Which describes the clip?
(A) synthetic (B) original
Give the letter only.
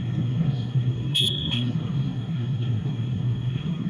A